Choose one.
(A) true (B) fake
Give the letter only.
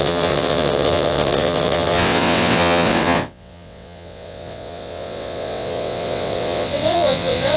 B